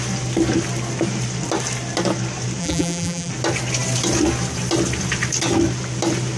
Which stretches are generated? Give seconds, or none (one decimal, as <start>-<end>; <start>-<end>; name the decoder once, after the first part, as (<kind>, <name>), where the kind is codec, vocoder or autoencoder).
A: 2.6-3.3 (vocoder, BigVGAN v2)